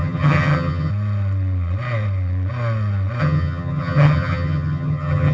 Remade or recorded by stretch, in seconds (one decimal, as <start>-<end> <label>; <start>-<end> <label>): 0.0-0.9 remade; 0.9-3.2 recorded; 3.2-5.3 remade